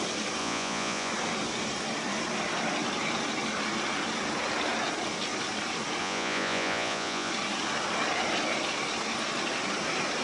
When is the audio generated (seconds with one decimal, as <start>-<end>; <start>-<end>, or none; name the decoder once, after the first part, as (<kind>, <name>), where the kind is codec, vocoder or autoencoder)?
0.4-1.1 (vocoder, Vocos); 6.0-7.3